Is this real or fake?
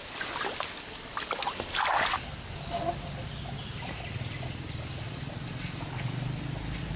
real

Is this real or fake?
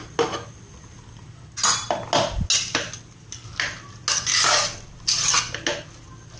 real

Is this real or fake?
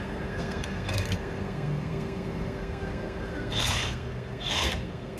fake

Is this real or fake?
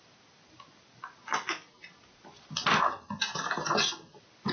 real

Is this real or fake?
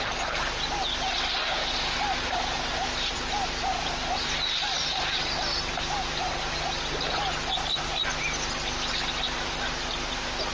fake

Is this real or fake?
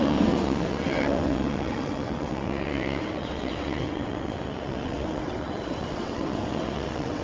fake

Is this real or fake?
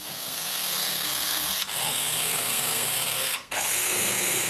fake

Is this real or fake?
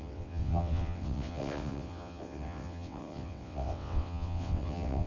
fake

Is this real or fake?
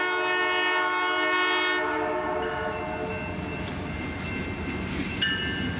real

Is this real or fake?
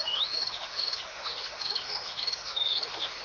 fake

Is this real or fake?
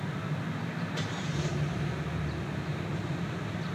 real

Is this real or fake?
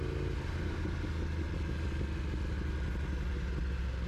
real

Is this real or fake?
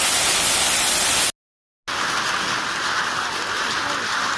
real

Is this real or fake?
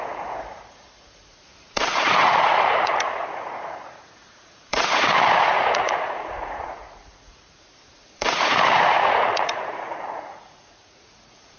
fake